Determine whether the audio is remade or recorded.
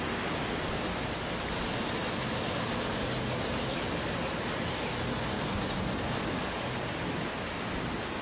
recorded